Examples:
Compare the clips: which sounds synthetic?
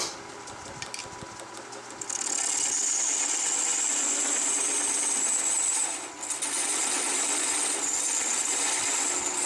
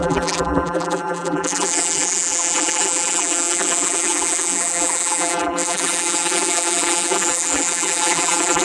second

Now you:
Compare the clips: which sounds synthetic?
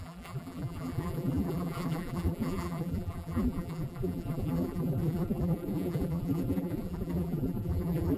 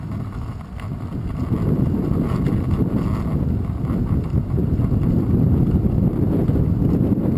first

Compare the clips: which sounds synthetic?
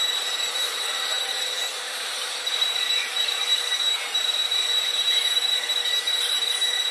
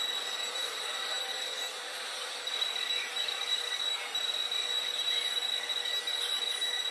first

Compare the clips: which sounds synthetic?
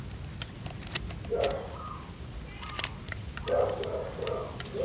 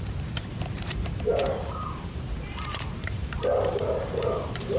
second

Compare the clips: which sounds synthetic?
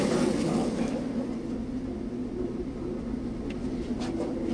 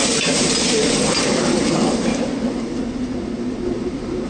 second